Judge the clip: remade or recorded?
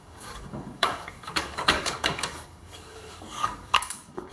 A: remade